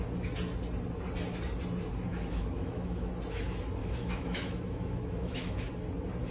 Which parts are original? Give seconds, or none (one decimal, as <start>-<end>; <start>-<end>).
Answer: 0.0-2.1; 3.1-3.8; 5.7-6.3